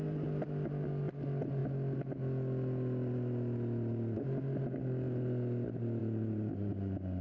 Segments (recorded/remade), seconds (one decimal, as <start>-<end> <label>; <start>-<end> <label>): 0.0-6.0 recorded; 6.0-6.7 remade; 6.7-7.2 recorded